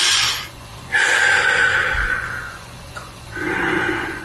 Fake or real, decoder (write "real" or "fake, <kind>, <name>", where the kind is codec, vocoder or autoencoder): fake, vocoder, Vocos